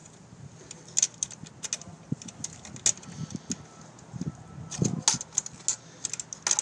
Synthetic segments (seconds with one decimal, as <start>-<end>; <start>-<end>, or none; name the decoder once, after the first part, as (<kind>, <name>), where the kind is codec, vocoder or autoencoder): none

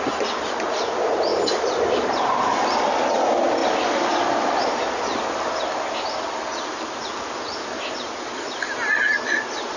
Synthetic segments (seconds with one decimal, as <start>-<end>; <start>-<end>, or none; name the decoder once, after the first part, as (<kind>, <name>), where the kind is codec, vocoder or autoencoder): 1.3-2.9 (vocoder, BigVGAN v2)

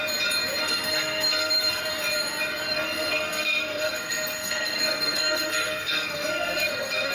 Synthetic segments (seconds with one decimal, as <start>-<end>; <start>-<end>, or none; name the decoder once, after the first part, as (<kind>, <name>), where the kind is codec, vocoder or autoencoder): 0.6-1.8 (codec, SNAC); 2.7-7.1

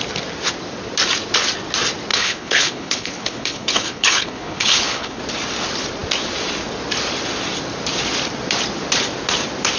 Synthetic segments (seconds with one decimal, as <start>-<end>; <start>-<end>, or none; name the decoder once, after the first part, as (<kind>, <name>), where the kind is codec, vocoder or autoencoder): 2.1-5.2 (codec, HILCodec)

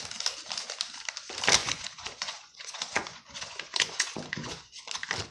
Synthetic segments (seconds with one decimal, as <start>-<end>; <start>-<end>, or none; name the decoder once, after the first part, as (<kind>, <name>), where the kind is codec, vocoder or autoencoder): 1.6-4.8 (vocoder, Vocos)